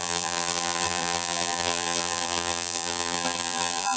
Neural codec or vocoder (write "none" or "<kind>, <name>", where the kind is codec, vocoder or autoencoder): vocoder, BigVGAN v2